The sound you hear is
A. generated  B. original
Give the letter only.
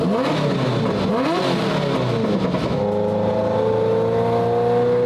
B